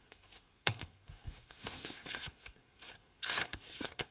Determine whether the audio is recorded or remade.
remade